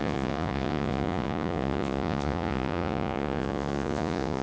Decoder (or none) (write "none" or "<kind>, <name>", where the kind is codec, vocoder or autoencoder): vocoder, Vocos